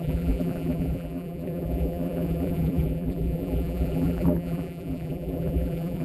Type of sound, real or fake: fake